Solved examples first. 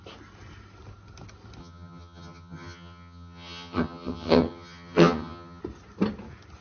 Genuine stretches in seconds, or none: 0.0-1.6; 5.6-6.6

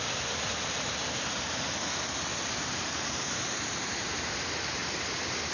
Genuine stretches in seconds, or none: 0.0-2.3; 4.1-5.5

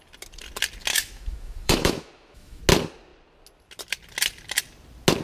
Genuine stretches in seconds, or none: 0.0-0.9; 2.6-5.2